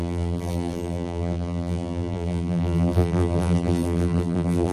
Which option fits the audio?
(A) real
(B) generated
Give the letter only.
B